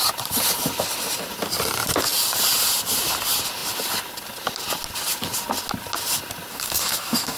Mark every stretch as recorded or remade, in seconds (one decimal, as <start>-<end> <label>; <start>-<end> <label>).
0.0-6.5 recorded; 6.5-7.4 remade